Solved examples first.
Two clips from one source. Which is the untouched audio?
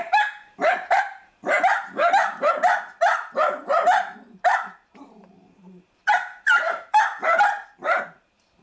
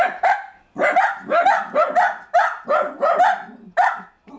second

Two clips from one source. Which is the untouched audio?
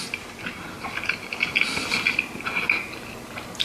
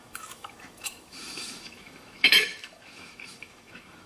first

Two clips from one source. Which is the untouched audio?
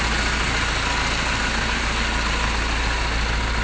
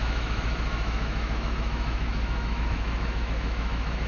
first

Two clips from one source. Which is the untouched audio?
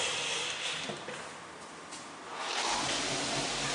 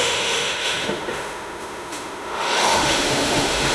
first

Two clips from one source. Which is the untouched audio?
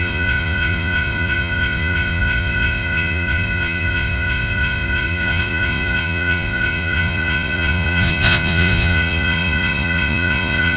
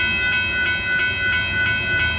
second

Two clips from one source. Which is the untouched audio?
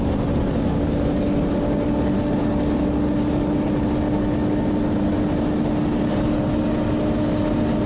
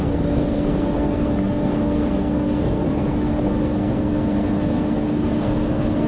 first